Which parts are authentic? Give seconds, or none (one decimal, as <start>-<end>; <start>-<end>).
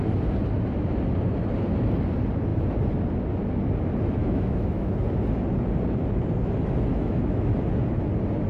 0.0-4.2; 4.9-6.9; 7.5-8.5